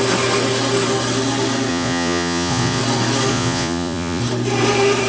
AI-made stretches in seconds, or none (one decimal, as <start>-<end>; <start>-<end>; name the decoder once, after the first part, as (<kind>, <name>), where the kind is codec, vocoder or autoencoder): 1.7-2.8 (vocoder, Vocos); 3.3-4.2